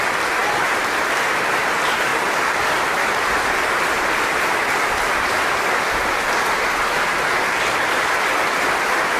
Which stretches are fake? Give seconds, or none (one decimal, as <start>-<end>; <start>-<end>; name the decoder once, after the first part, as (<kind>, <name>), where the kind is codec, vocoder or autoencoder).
0.4-1.2 (vocoder, BigVGAN v2)